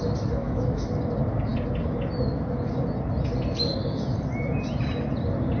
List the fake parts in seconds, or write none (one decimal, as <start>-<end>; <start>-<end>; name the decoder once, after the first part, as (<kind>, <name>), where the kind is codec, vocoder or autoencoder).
0.4-0.9 (autoencoder, DAC-VAE)

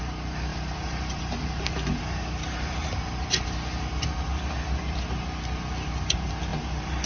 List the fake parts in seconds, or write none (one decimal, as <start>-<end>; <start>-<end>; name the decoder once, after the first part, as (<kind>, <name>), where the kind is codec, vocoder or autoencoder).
0.5-2.0 (vocoder, BigVGAN v2)

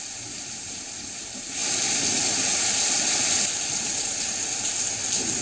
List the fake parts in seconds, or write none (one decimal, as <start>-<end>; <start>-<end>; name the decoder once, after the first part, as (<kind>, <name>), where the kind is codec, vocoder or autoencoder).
none